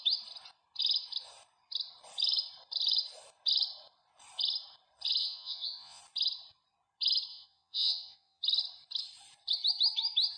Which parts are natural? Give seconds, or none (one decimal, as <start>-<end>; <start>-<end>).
0.0-5.2; 6.0-7.3; 8.4-10.4

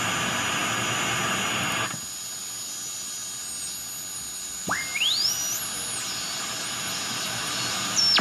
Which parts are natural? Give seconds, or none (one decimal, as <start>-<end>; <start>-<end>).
0.0-8.2

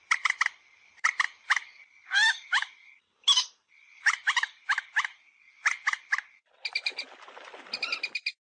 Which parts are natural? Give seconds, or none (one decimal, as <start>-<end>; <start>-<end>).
0.0-8.4

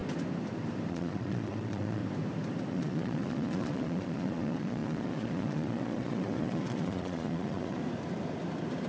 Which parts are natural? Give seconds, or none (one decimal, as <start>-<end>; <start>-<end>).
0.0-0.9; 2.0-2.7; 7.8-8.9

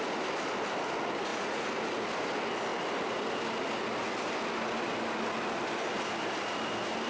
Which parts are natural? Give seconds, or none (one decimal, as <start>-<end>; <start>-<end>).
0.0-1.3; 1.8-7.1

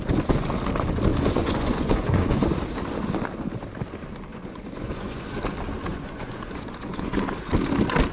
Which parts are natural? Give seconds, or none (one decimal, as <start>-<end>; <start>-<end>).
0.0-1.1; 2.5-4.3; 5.4-5.9; 7.2-8.1

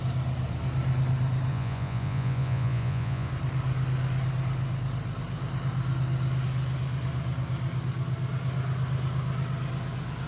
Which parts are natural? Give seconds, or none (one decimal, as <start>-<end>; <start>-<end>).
0.0-1.5; 3.3-10.3

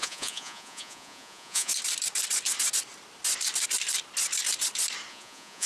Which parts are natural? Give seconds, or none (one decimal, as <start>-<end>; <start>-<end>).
1.7-5.1